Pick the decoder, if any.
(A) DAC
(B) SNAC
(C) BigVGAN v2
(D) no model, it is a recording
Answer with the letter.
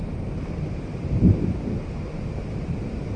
C